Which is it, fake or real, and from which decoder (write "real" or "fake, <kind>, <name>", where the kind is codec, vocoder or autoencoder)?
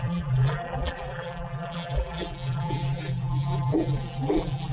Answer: fake, vocoder, BigVGAN v2